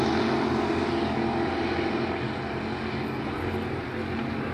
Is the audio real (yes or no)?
yes